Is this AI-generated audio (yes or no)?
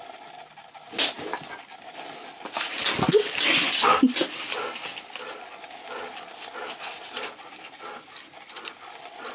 no